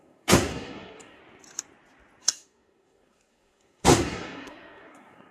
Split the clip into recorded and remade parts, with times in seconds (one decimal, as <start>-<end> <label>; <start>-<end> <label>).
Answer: 0.0-1.2 remade; 1.2-2.2 recorded; 2.2-5.3 remade